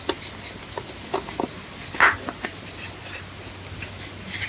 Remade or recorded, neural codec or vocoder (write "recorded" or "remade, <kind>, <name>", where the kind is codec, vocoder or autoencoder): recorded